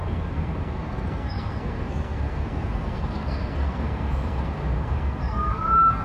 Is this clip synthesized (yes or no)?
yes